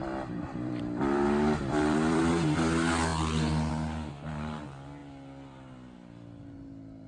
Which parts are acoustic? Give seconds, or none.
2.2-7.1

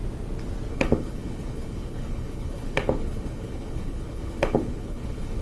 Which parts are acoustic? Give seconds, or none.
0.0-0.7